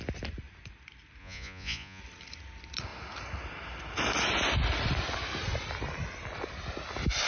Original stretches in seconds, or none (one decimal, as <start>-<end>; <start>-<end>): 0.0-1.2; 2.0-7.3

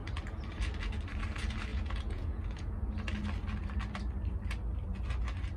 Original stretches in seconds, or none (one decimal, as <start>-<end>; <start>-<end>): 0.0-1.7; 2.9-5.6

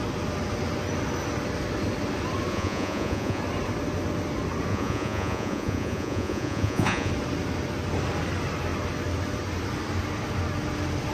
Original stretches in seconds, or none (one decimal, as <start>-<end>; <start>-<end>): 0.0-2.5; 3.4-4.7; 7.1-11.1